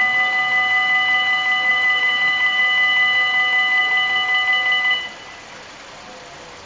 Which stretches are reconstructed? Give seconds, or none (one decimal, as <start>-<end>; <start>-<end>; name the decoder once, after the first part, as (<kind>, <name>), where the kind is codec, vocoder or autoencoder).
1.7-2.6 (vocoder, BigVGAN v2)